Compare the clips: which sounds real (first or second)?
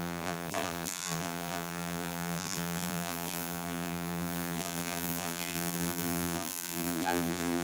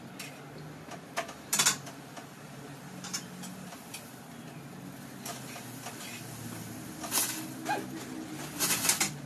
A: second